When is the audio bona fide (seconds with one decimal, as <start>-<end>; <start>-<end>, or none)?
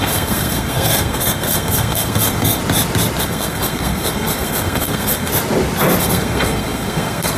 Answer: 2.6-3.2; 5.3-6.0